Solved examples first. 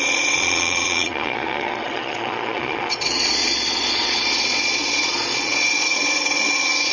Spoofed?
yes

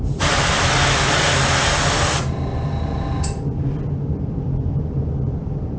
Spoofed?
no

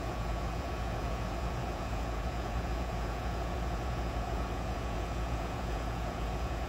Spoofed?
yes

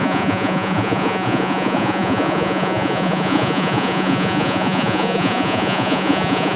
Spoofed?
yes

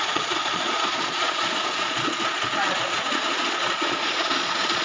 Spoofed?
yes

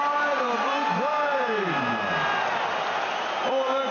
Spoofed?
no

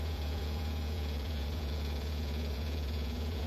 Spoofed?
yes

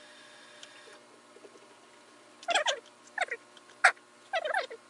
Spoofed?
no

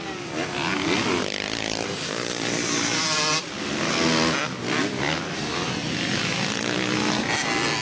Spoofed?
no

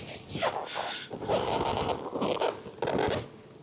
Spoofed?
no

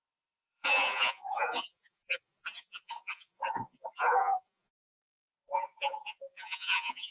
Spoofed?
yes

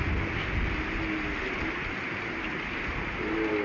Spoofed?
no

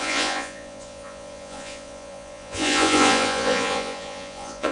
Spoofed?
yes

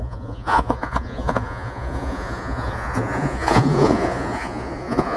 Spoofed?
yes